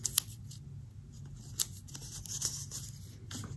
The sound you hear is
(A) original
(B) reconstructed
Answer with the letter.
A